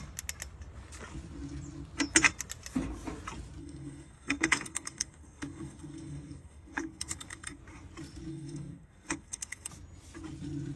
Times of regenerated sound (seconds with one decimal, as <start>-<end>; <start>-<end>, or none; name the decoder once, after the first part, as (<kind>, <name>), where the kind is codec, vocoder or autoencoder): 3.6-7.6 (codec, SNAC); 8.3-9.7